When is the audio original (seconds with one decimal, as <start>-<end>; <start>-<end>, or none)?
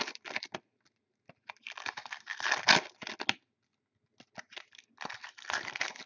0.0-6.1